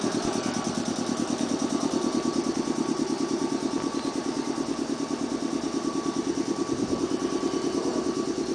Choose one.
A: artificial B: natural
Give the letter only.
B